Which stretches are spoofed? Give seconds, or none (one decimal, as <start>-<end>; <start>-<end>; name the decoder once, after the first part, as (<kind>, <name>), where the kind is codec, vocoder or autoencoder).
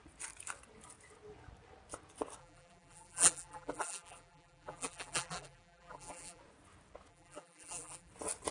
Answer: 2.4-6.4 (vocoder, BigVGAN v2); 7.1-8.1